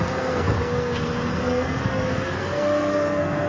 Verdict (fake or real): fake